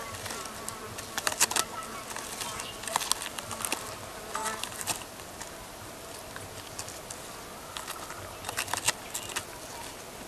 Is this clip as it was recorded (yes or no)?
yes